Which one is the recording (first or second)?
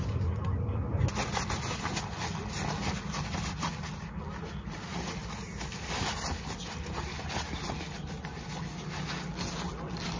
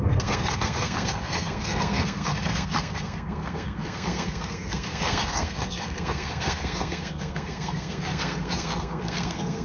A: first